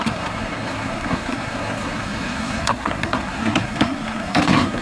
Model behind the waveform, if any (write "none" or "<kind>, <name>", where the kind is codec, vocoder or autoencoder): codec, SNAC